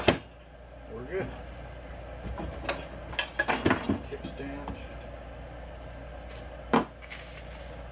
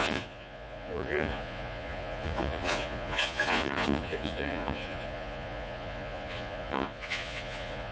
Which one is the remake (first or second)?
second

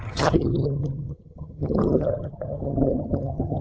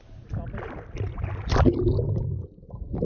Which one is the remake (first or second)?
first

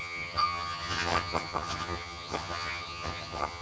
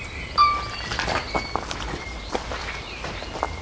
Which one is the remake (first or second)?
first